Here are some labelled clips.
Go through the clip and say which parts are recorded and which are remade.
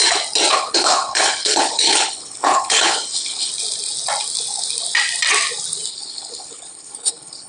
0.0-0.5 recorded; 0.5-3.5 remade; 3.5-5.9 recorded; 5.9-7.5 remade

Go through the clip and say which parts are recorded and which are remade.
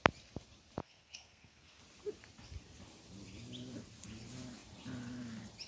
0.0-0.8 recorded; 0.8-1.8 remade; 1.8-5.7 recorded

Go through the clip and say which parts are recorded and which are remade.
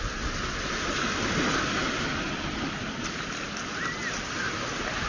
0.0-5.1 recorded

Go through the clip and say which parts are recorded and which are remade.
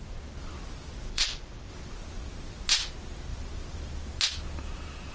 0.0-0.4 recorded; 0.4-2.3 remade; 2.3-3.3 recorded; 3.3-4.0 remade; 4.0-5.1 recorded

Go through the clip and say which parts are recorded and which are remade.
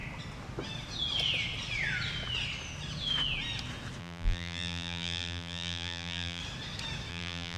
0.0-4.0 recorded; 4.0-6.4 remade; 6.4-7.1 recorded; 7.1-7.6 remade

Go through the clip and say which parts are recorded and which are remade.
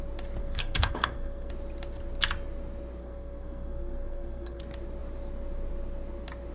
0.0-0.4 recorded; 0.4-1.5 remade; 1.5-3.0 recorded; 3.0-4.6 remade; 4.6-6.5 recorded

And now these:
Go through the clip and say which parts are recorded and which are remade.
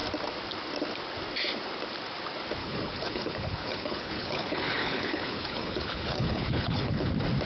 0.0-2.6 recorded; 2.6-7.1 remade; 7.1-7.5 recorded